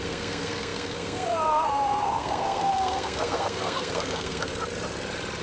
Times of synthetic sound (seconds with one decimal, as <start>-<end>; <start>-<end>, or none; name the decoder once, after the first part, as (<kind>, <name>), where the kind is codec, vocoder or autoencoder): 0.0-4.5 (codec, SNAC)